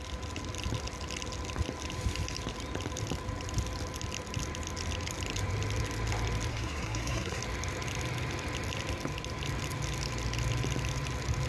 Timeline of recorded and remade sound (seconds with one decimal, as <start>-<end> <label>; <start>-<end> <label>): 0.0-6.5 recorded; 6.5-7.4 remade; 7.4-11.5 recorded